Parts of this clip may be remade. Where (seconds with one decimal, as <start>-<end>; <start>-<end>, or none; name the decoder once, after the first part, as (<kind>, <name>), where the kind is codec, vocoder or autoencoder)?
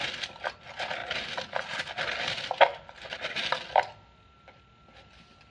none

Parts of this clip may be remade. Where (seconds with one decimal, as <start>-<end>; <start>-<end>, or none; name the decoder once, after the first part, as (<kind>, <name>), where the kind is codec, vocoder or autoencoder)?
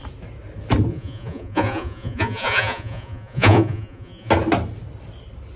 0.9-4.3 (vocoder, Vocos)